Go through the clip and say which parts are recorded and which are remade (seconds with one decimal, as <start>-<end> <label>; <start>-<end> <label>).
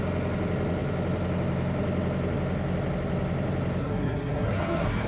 0.0-3.8 recorded; 3.8-5.1 remade